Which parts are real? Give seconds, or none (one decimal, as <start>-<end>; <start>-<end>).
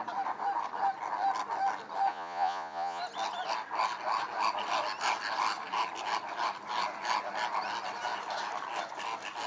0.0-2.1; 3.0-9.5